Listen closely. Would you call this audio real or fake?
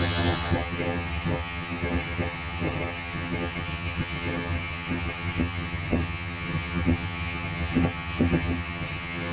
fake